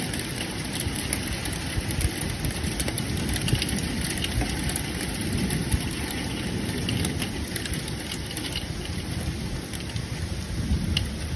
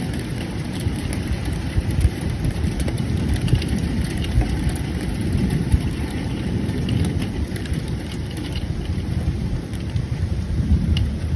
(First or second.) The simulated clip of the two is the second